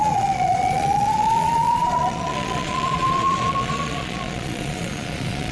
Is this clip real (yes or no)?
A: no